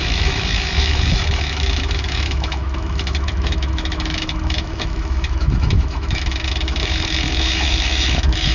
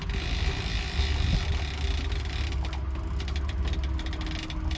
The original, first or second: second